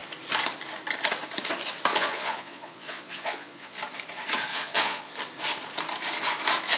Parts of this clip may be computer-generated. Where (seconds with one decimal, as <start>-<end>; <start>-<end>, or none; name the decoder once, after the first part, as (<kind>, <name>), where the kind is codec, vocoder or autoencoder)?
1.9-3.8 (vocoder, Vocos); 4.5-5.1